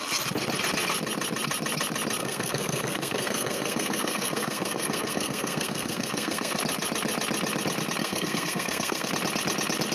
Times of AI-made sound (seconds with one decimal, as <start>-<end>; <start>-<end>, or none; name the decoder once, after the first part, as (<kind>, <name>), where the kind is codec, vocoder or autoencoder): 2.2-6.6 (codec, SNAC); 8.0-9.1